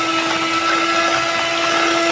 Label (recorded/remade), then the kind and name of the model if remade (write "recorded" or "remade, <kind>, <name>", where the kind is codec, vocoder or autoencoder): recorded